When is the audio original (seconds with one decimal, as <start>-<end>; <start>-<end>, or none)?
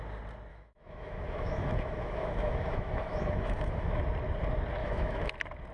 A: 0.0-0.5; 3.9-4.8; 5.3-5.7